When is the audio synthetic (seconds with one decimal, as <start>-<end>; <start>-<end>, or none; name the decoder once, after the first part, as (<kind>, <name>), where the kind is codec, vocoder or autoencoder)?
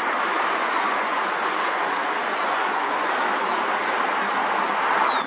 0.6-3.1 (vocoder, Vocos)